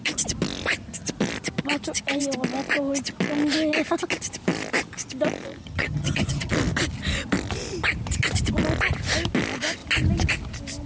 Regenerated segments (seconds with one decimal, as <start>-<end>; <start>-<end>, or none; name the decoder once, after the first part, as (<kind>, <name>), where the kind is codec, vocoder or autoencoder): 5.6-6.5 (vocoder, HiFi-GAN)

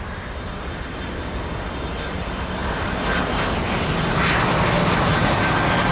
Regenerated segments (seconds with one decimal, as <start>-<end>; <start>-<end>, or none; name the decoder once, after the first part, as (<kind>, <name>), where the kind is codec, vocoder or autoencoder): none

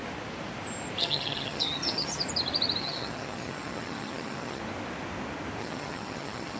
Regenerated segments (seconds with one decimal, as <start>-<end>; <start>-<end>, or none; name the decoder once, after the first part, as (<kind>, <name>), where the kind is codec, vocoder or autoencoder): 1.0-2.2 (vocoder, HiFi-GAN); 2.8-4.6; 5.6-6.6

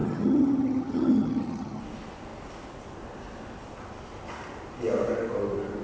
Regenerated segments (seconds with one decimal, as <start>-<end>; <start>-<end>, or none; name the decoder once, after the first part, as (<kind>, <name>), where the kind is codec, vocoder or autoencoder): 0.0-1.8 (vocoder, HiFi-GAN)

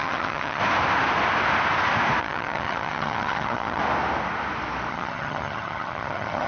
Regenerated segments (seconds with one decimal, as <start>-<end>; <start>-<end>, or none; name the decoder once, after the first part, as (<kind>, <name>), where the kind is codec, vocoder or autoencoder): 0.0-0.6 (vocoder, HiFi-GAN); 2.2-3.8; 4.9-6.5